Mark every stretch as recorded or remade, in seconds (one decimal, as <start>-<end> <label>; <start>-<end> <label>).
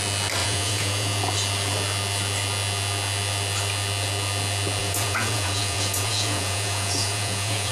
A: 0.0-0.4 recorded; 0.4-1.2 remade; 1.2-4.8 recorded; 4.8-7.7 remade